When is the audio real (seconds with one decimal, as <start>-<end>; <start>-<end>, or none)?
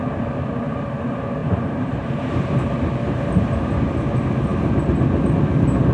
0.0-1.4; 3.7-5.9